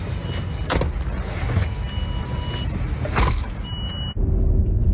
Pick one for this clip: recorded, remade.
recorded